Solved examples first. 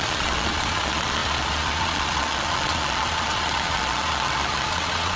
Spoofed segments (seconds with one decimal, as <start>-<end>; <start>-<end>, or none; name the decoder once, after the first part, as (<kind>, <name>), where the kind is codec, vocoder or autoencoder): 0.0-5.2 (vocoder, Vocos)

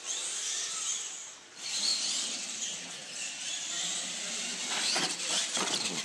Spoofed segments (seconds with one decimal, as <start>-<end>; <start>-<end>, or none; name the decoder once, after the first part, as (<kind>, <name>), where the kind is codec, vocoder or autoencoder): 1.9-3.7 (vocoder, BigVGAN v2); 4.5-6.0

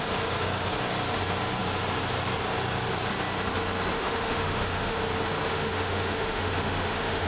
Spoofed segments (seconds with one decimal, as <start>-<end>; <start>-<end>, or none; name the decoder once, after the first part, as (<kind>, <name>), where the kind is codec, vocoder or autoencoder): 3.9-5.0 (autoencoder, DAC-VAE); 5.5-7.3